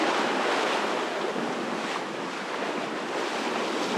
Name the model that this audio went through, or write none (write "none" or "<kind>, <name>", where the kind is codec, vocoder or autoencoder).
none